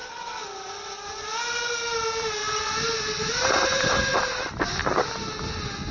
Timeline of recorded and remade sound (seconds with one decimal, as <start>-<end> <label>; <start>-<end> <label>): 0.0-2.4 remade; 2.4-3.3 recorded; 3.3-4.8 remade; 4.8-5.9 recorded

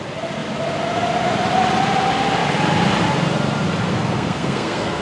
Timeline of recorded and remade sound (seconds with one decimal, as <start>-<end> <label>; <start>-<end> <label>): 0.0-3.9 recorded; 3.9-5.0 remade

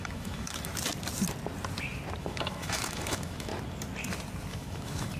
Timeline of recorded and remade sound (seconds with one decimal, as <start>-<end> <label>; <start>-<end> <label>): 0.0-0.7 remade; 0.7-2.2 recorded; 2.2-3.5 remade; 3.5-4.5 recorded; 4.5-5.2 remade

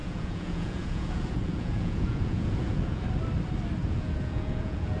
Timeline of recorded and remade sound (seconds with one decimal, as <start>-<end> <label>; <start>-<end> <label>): 0.0-3.0 remade; 3.0-3.8 recorded; 3.8-5.0 remade

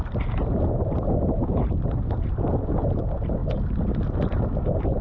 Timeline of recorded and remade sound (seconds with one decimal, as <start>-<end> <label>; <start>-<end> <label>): 0.0-5.0 recorded

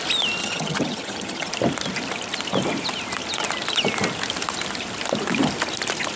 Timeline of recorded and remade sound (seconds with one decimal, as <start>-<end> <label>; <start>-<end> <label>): 0.0-0.4 recorded; 0.4-1.5 remade; 1.5-6.2 recorded